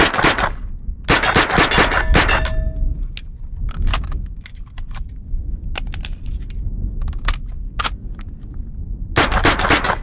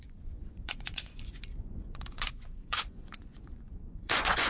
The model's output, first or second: second